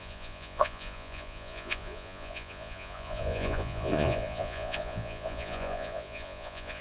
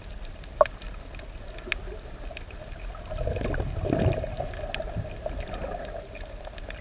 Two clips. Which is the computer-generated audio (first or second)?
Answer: first